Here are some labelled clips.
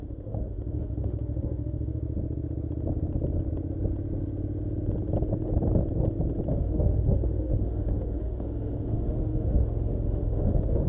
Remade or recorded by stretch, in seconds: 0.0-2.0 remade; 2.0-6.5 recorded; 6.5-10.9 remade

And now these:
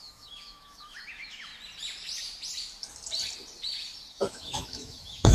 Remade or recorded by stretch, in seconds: 0.0-1.5 remade; 1.5-4.1 recorded; 4.1-5.3 remade

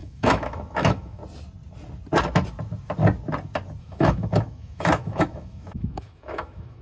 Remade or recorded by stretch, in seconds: 0.0-1.2 remade; 1.2-3.8 recorded; 3.8-6.8 remade